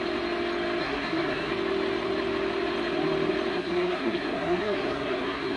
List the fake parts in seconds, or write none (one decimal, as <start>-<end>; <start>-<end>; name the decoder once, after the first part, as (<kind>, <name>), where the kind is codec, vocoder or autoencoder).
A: 0.8-1.5 (codec, SNAC); 3.5-5.6